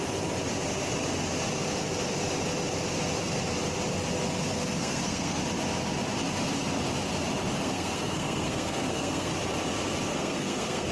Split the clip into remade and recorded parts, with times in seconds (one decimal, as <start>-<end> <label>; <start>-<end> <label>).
0.0-4.8 recorded; 4.8-5.4 remade; 5.4-7.6 recorded; 7.6-9.3 remade; 9.3-10.1 recorded; 10.1-10.9 remade